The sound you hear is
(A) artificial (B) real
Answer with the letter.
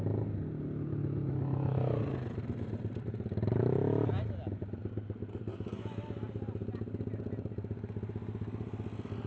B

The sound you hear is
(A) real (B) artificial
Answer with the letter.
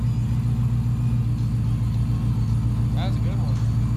A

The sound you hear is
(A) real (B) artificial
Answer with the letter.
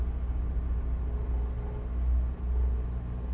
A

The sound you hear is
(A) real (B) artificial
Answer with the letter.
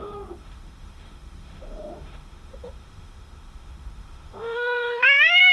B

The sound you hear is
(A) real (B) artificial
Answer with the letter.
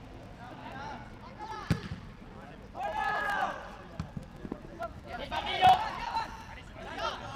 A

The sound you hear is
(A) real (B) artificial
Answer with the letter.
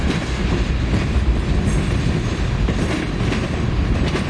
A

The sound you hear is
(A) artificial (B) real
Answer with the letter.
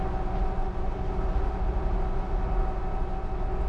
B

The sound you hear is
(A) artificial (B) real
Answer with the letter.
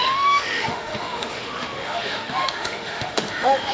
A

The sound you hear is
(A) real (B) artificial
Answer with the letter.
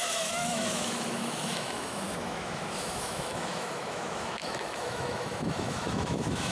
B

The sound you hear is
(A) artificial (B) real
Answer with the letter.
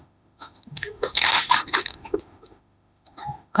A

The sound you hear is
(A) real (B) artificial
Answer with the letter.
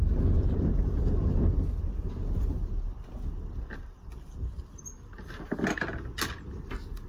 A